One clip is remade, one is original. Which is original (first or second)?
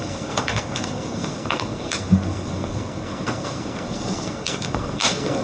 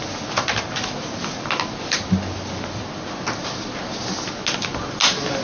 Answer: second